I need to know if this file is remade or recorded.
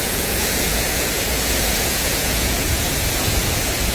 remade